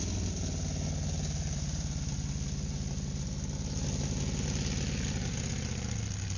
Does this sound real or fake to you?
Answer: real